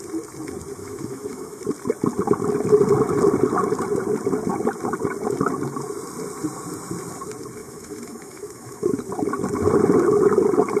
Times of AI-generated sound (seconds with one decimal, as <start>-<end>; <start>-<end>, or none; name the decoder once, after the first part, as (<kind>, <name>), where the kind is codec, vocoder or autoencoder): 0.8-1.6 (autoencoder, DAC-VAE); 7.6-9.1